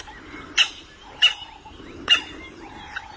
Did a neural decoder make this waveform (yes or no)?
yes